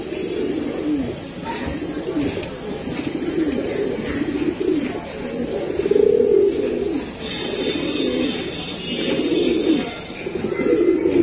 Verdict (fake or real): real